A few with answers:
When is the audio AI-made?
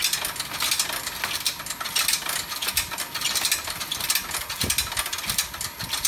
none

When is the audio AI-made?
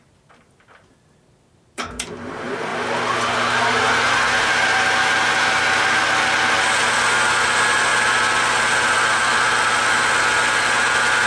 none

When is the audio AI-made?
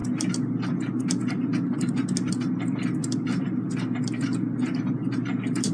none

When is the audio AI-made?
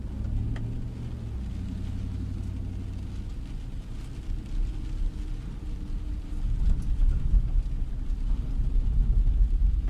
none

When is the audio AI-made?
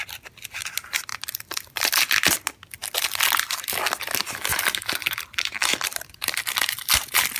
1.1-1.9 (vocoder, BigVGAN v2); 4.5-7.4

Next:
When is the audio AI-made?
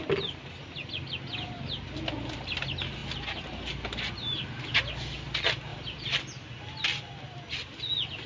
5.7-6.4 (vocoder, BigVGAN v2)